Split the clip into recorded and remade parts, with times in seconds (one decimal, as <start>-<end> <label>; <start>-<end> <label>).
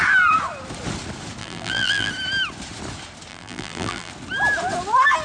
0.0-1.4 recorded; 1.4-2.1 remade; 2.1-3.3 recorded; 3.3-4.1 remade; 4.1-5.2 recorded